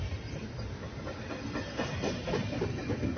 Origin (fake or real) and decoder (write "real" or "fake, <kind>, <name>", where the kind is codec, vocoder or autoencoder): real